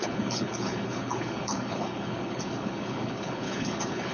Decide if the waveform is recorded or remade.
remade